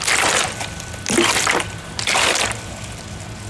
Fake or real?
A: real